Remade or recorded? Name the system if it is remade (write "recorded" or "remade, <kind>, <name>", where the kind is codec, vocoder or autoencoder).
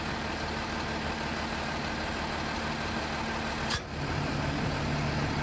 recorded